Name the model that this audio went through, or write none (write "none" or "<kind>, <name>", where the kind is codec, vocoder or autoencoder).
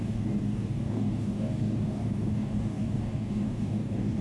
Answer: codec, DAC